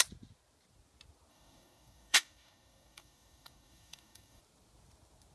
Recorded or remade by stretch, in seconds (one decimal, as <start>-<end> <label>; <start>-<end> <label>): 0.0-1.3 recorded; 1.3-4.4 remade; 4.4-5.3 recorded